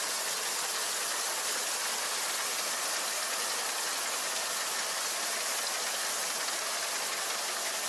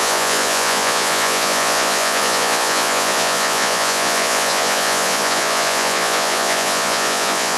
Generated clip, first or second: second